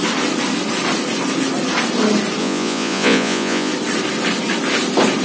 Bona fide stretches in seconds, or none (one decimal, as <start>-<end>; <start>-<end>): 0.0-2.4; 3.7-5.2